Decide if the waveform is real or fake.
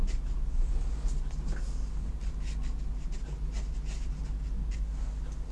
real